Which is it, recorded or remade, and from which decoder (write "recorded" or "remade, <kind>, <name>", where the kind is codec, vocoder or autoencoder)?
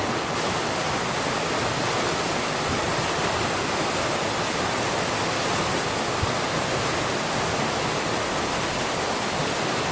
recorded